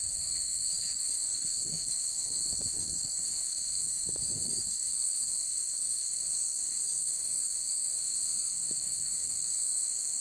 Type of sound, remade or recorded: remade